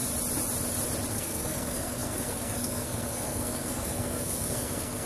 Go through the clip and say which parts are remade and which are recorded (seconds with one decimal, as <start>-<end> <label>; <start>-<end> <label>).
0.0-1.1 recorded; 1.1-5.1 remade